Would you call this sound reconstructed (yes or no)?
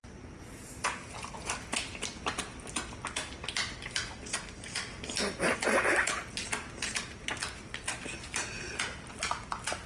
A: no